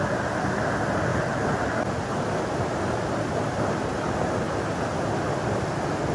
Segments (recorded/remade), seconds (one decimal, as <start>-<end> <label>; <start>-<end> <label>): 0.0-6.1 recorded